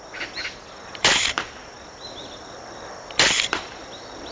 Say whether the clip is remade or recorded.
remade